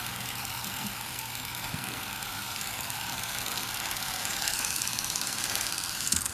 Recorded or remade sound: remade